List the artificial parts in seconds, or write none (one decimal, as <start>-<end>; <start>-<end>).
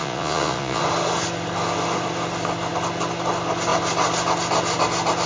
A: 0.0-0.8